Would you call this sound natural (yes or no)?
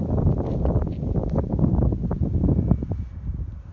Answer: yes